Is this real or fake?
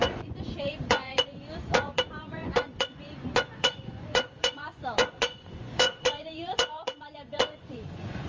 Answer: fake